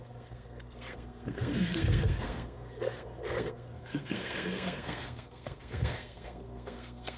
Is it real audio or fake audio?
fake